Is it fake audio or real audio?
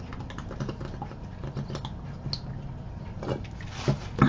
real